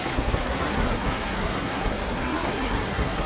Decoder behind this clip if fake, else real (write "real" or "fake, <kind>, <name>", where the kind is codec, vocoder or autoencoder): fake, codec, SNAC